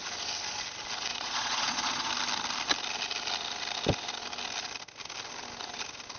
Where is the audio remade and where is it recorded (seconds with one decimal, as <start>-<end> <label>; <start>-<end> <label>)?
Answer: 0.0-1.1 recorded; 1.1-2.1 remade; 2.1-6.2 recorded